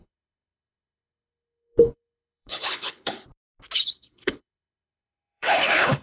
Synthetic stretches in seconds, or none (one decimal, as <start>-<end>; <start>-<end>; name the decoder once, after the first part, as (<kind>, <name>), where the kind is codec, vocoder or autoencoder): 0.0-3.3 (codec, HILCodec); 3.8-6.0